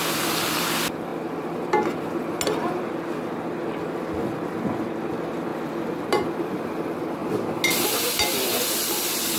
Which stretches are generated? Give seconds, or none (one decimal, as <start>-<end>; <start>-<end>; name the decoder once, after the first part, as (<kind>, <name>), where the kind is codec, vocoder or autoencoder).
0.0-1.1 (vocoder, BigVGAN v2); 5.1-7.2; 7.9-9.4